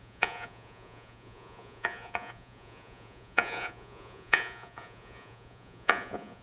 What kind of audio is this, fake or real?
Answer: fake